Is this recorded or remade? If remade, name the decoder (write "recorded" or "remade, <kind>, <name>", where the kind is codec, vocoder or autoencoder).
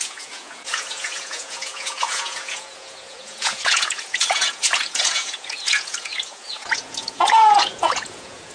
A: remade, vocoder, Vocos